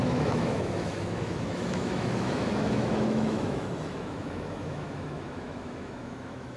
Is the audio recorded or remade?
remade